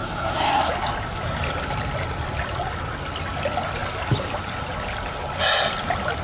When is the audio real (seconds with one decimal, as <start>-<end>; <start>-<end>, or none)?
0.7-6.2